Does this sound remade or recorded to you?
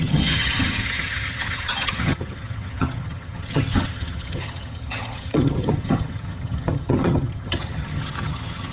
remade